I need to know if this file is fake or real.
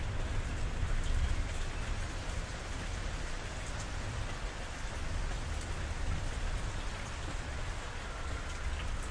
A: real